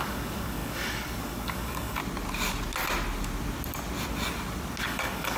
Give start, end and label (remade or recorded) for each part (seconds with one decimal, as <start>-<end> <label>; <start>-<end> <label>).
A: 0.0-2.0 remade; 2.0-4.8 recorded; 4.8-5.4 remade